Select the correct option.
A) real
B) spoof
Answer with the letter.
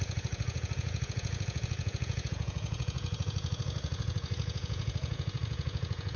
B